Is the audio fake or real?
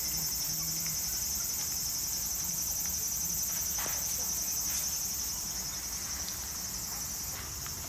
real